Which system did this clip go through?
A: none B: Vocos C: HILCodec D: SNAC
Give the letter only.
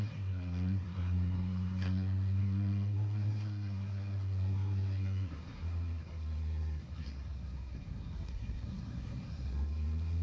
D